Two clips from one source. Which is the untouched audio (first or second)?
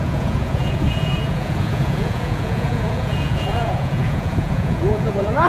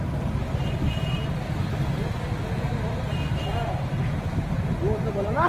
second